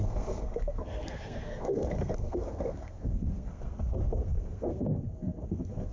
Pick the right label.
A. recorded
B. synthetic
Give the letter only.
B